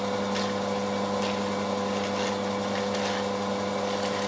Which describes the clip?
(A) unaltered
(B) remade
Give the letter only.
A